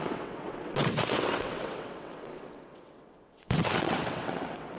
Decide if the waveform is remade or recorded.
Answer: remade